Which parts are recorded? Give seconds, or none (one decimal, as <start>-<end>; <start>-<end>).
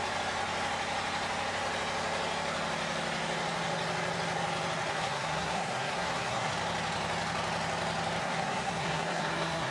0.0-4.9; 6.5-8.2